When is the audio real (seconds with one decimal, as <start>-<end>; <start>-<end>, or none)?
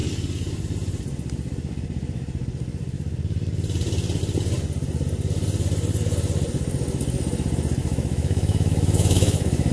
0.0-7.8